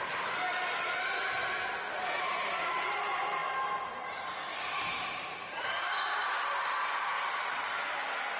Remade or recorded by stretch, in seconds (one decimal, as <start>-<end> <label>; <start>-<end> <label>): 0.0-8.4 recorded